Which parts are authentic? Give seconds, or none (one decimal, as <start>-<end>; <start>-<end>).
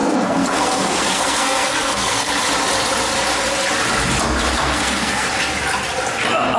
2.3-4.5; 5.3-6.6